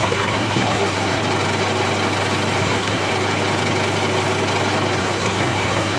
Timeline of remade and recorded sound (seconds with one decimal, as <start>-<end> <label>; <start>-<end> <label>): 0.0-1.2 remade; 1.2-2.6 recorded; 2.6-3.1 remade; 3.1-5.0 recorded; 5.0-6.0 remade